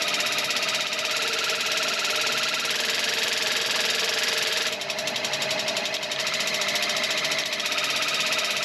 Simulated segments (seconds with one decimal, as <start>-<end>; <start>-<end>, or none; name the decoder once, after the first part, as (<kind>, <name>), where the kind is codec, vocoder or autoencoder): none